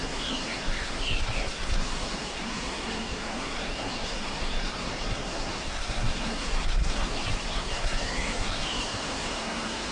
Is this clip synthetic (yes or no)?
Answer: yes